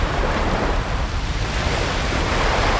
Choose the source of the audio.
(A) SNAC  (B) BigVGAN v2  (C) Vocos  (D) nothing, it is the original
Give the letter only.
D